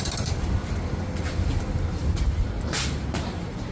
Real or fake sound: fake